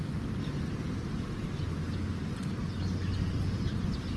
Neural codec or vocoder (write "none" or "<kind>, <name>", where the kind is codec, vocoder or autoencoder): none